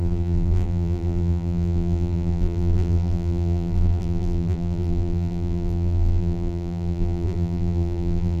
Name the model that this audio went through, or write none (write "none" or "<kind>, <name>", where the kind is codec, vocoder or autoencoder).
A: vocoder, BigVGAN v2